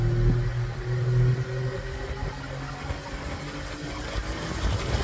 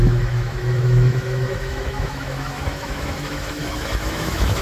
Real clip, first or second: first